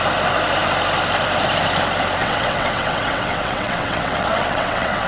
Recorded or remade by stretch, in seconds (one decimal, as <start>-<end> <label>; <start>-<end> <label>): 0.0-2.2 recorded; 2.2-5.1 remade